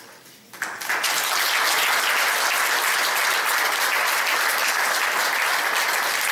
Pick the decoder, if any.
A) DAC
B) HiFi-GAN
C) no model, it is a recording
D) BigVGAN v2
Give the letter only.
C